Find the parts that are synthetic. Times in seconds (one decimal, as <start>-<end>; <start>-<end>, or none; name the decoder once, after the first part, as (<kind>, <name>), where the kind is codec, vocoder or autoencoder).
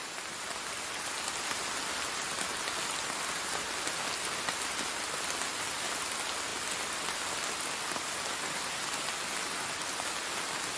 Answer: none